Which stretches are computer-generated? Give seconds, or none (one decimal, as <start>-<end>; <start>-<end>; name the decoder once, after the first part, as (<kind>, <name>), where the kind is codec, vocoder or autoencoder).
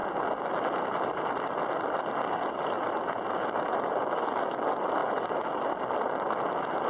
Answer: none